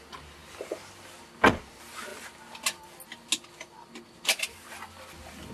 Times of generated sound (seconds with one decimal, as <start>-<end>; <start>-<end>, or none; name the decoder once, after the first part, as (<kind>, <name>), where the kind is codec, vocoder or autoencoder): none